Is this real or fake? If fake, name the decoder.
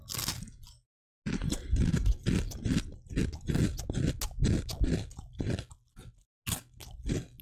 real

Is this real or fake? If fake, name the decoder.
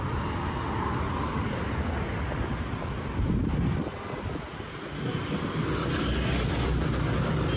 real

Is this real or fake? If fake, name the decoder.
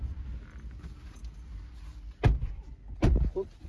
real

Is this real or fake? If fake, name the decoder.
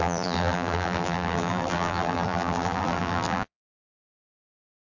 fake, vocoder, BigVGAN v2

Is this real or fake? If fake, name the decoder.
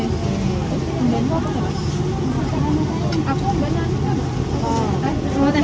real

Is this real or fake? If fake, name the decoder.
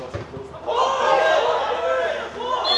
real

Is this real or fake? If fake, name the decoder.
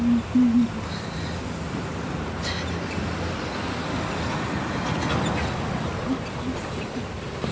real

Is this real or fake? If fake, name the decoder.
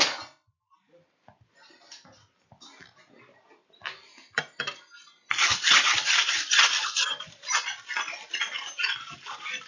fake, vocoder, BigVGAN v2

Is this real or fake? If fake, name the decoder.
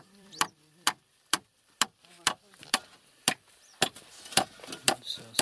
fake, vocoder, BigVGAN v2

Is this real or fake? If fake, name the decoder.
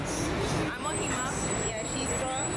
real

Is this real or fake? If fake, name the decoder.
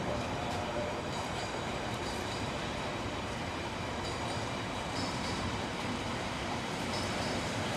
fake, vocoder, BigVGAN v2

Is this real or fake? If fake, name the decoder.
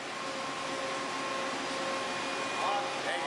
real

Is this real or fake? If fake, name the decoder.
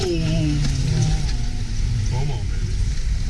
real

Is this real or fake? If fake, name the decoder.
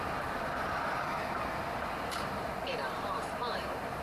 real